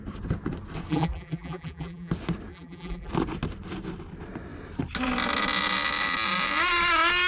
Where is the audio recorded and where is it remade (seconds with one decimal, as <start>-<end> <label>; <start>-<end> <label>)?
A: 0.0-0.9 recorded; 0.9-2.1 remade; 2.1-2.5 recorded; 2.5-3.1 remade; 3.1-7.3 recorded